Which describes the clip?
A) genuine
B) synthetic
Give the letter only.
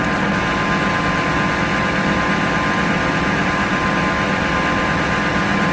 A